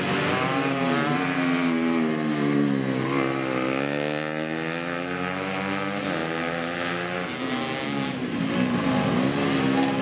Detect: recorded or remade recorded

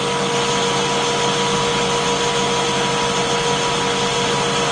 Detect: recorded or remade recorded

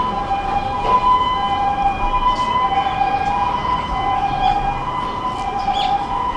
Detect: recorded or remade recorded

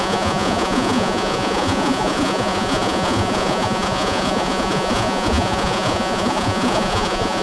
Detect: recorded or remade remade